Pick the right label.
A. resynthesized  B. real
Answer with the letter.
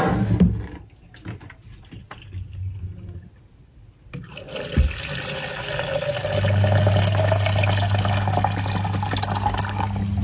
B